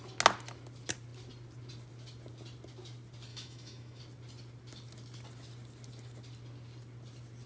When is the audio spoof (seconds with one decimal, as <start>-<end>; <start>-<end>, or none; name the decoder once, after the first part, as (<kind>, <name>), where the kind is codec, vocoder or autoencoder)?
3.3-4.0 (autoencoder, DAC-VAE)